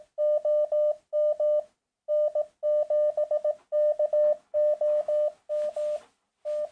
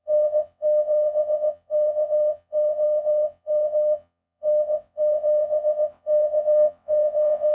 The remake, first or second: second